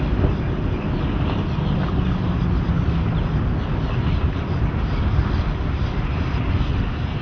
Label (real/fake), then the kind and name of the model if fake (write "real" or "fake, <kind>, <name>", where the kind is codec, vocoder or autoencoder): real